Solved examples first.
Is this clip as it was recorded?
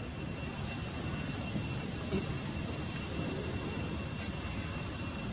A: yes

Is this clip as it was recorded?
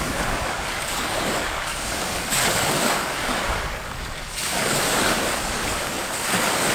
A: no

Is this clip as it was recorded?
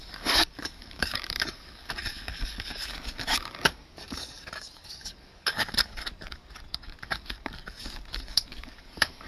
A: no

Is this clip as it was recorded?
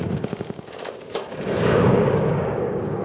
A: no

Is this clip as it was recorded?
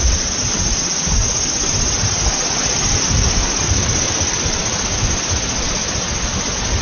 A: yes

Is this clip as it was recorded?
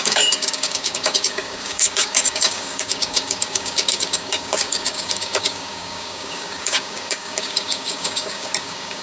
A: no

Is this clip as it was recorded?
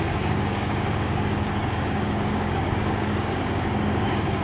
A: no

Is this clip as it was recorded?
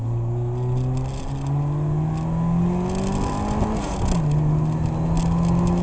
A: yes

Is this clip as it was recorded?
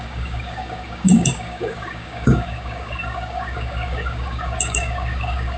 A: no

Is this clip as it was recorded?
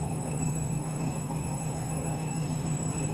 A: no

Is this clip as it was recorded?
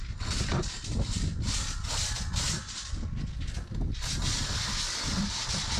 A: yes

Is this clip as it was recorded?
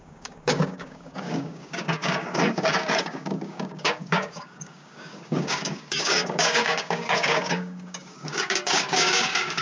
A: no